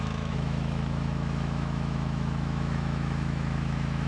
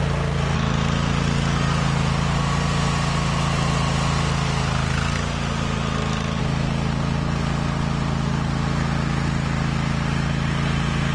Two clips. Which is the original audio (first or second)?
second